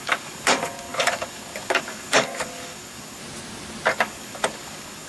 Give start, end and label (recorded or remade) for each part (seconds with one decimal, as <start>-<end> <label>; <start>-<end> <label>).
0.0-3.2 remade; 3.2-3.9 recorded; 3.9-5.1 remade